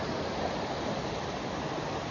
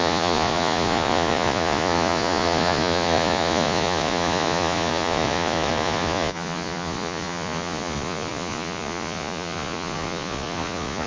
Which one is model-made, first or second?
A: second